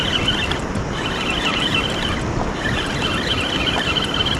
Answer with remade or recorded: recorded